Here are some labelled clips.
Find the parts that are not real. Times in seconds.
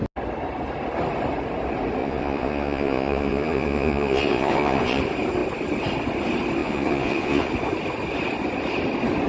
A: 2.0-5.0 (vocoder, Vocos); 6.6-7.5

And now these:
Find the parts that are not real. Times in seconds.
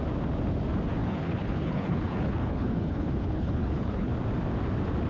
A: 1.0-4.1 (codec, HILCodec)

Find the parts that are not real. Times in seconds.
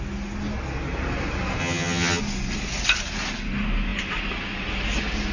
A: 1.6-2.2 (vocoder, HiFi-GAN)